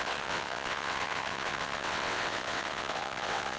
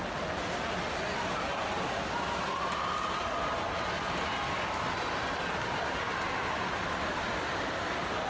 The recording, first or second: second